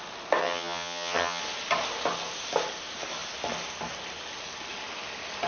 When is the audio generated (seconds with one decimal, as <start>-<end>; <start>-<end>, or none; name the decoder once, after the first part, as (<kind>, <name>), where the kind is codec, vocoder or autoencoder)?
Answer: 0.4-1.4 (vocoder, HiFi-GAN)